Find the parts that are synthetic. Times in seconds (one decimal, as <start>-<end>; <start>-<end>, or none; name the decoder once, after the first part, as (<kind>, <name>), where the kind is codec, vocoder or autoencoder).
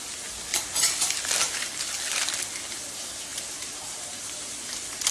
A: 3.3-5.1 (vocoder, BigVGAN v2)